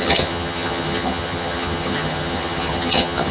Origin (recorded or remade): remade